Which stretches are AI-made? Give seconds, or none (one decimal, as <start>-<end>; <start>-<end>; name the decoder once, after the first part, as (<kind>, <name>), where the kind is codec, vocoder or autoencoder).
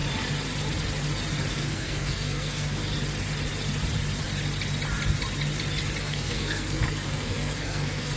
1.5-2.8 (codec, SNAC); 6.0-8.2